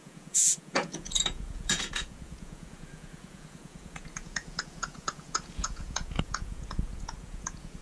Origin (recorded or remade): remade